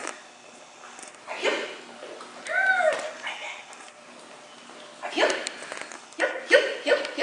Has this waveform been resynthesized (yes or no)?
no